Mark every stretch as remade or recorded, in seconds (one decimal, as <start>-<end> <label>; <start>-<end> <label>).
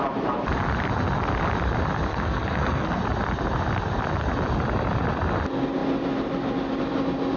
0.0-2.1 recorded; 2.1-3.0 remade; 3.0-7.4 recorded